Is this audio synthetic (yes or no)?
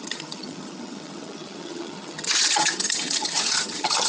yes